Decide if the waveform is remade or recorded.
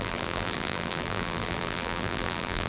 remade